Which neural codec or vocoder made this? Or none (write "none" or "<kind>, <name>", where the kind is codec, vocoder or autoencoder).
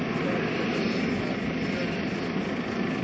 none